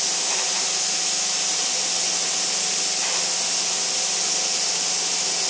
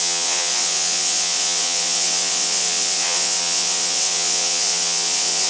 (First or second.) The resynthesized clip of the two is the second